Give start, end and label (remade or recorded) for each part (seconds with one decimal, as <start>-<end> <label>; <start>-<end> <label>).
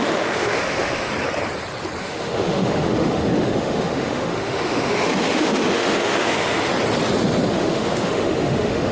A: 0.0-1.1 remade; 1.1-2.0 recorded; 2.0-6.7 remade; 6.7-7.5 recorded; 7.5-8.9 remade